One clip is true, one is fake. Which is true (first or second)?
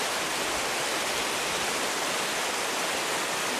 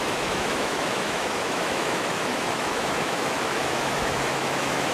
first